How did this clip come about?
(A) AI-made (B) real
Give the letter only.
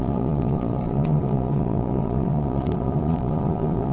A